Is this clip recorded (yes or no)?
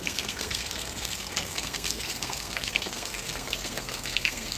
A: no